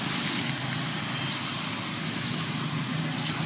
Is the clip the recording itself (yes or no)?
yes